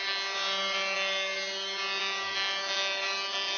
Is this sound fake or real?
real